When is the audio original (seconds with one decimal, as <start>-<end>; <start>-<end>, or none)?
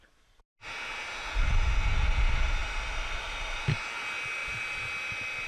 0.0-5.5